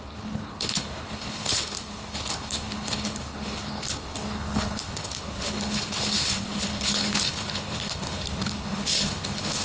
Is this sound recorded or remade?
remade